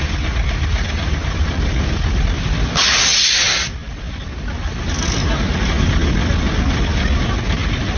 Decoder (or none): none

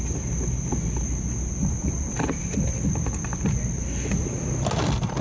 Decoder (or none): none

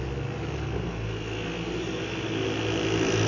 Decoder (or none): none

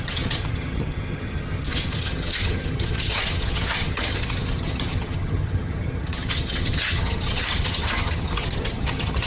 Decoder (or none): vocoder, HiFi-GAN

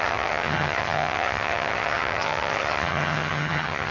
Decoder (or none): vocoder, HiFi-GAN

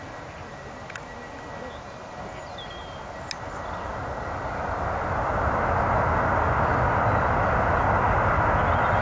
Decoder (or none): none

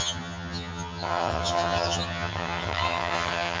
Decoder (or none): vocoder, HiFi-GAN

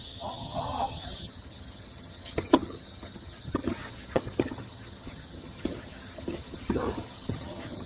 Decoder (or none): vocoder, HiFi-GAN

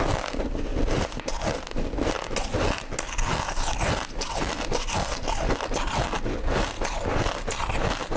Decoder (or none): none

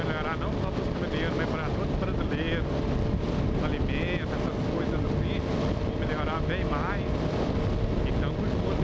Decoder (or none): none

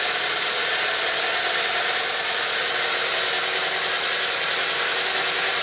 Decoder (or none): none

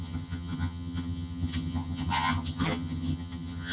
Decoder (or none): vocoder, HiFi-GAN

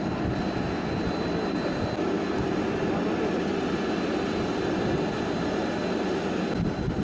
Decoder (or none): none